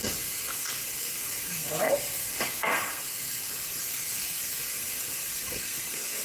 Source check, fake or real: fake